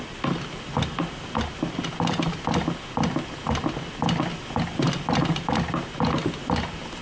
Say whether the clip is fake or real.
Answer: real